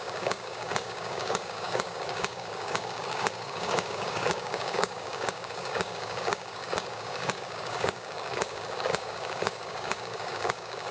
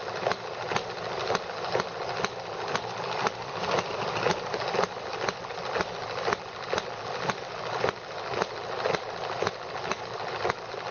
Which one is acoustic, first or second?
second